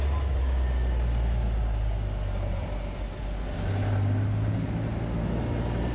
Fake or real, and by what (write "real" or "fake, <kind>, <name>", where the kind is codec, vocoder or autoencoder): real